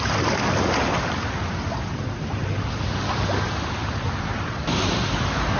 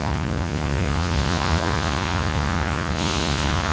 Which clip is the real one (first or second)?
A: first